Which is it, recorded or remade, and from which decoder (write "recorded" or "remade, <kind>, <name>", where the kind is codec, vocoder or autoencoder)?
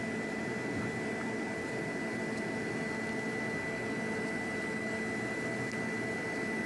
recorded